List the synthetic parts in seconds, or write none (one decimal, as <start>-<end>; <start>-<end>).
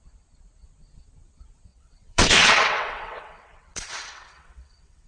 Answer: 1.7-5.1